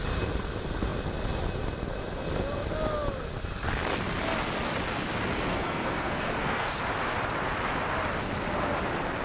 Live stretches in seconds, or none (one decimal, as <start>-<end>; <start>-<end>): 0.0-5.5; 6.8-9.2